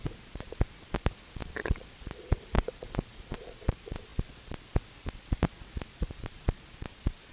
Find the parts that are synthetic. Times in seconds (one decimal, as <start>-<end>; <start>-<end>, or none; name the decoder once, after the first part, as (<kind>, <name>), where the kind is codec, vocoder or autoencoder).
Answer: 0.0-7.3 (vocoder, Vocos)